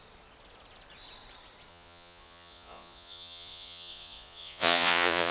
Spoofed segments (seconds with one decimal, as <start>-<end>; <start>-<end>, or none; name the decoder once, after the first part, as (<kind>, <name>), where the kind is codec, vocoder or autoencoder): 1.7-5.3 (vocoder, Vocos)